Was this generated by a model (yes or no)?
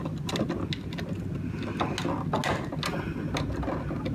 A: no